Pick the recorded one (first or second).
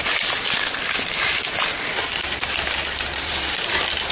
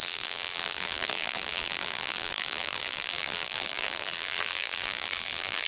first